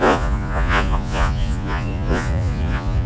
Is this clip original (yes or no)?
no